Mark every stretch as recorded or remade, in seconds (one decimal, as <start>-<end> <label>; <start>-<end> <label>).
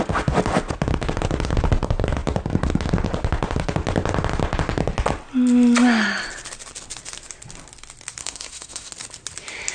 0.0-8.2 recorded; 8.2-8.9 remade; 8.9-9.7 recorded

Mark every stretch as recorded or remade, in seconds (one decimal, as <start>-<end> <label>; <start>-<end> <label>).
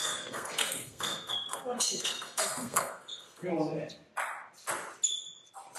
0.0-3.5 remade; 3.5-5.8 recorded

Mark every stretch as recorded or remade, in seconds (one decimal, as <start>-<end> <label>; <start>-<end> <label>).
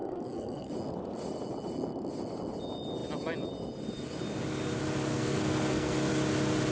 0.0-0.7 remade; 0.7-5.1 recorded; 5.1-6.1 remade; 6.1-6.7 recorded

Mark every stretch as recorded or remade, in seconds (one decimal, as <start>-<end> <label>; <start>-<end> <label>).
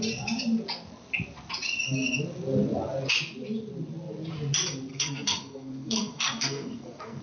0.0-4.9 recorded; 4.9-7.2 remade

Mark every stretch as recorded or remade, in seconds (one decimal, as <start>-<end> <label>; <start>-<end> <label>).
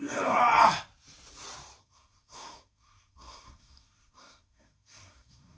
0.0-0.4 remade; 0.4-1.8 recorded; 1.8-5.6 remade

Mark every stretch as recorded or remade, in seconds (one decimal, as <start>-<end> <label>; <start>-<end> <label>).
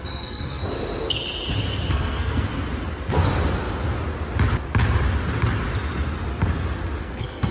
0.0-0.6 remade; 0.6-1.9 recorded; 1.9-2.5 remade; 2.5-7.0 recorded; 7.0-7.5 remade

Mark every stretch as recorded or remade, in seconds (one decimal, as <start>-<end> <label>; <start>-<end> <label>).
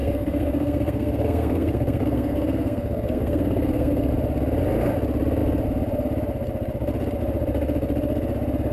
0.0-4.1 remade; 4.1-8.7 recorded